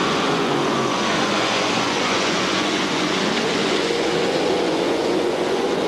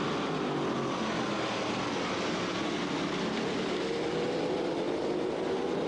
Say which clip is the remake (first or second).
first